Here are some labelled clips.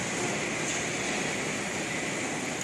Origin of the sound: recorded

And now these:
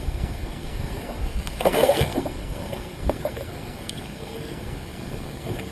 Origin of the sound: remade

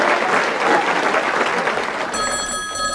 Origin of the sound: recorded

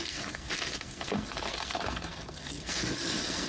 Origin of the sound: remade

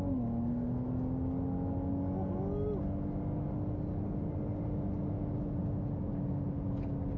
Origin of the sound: recorded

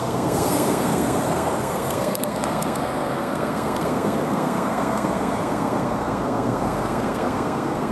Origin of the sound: remade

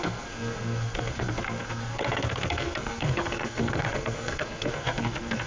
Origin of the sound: remade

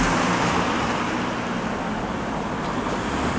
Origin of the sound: recorded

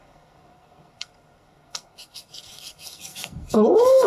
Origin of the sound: remade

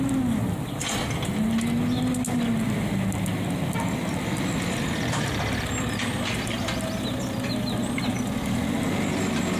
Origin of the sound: recorded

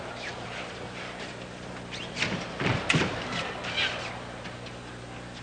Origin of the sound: recorded